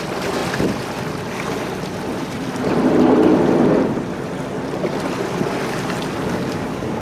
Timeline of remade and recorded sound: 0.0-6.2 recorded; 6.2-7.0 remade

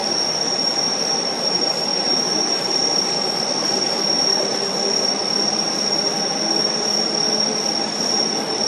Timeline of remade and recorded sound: 0.0-8.7 recorded

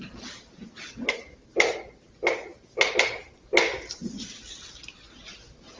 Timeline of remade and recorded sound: 0.0-5.8 recorded

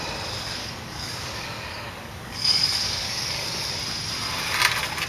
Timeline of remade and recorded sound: 0.0-0.6 recorded; 0.6-3.7 remade; 3.7-5.1 recorded